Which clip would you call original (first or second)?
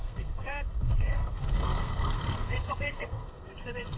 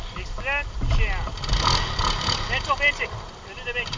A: second